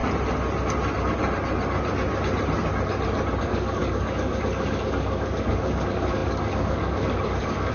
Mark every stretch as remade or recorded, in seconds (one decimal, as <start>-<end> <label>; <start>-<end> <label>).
0.0-3.4 recorded; 3.4-7.7 remade